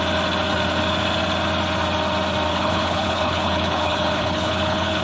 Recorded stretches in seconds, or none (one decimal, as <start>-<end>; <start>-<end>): 0.0-2.5

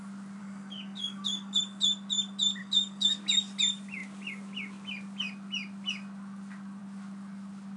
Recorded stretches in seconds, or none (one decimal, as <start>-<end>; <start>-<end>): 0.0-0.4; 1.6-2.6; 3.2-7.8

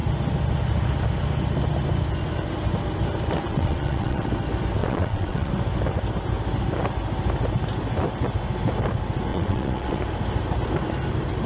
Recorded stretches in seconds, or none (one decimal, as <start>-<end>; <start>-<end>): 0.0-3.5; 4.3-4.8; 5.5-9.3; 10.0-11.5